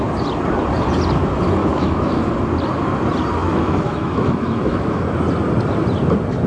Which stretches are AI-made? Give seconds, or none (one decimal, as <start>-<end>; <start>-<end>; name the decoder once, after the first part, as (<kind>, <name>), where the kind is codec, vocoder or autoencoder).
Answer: 1.6-2.3 (autoencoder, DAC-VAE); 3.4-5.0